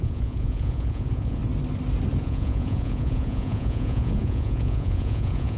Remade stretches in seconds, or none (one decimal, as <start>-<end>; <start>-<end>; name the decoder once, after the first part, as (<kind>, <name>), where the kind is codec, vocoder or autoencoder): 0.0-1.4 (vocoder, Vocos); 2.2-5.6